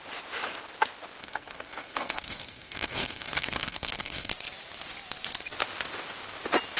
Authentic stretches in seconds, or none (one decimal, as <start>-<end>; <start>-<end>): 0.0-1.2; 4.3-6.8